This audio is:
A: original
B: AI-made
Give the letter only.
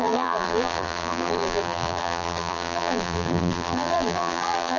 B